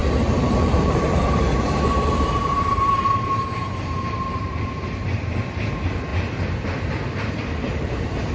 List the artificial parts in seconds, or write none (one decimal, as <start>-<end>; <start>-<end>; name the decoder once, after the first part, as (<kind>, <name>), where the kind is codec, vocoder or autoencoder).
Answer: 0.0-6.1 (vocoder, BigVGAN v2); 7.3-8.3